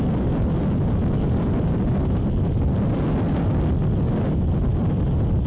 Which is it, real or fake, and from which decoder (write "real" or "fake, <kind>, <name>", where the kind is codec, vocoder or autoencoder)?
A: real